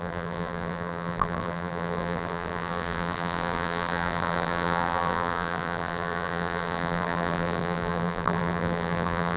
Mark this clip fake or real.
fake